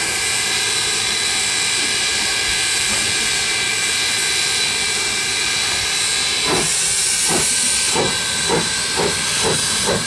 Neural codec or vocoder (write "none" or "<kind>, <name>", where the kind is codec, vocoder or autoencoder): vocoder, BigVGAN v2